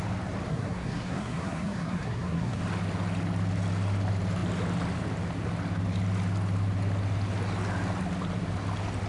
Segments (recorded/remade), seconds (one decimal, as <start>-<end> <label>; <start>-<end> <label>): 0.0-0.5 recorded; 0.5-2.6 remade; 2.6-9.1 recorded